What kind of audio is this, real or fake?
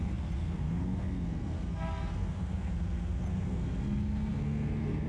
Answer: fake